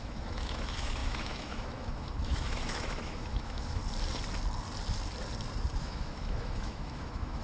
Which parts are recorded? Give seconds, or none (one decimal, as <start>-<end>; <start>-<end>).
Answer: 3.8-5.8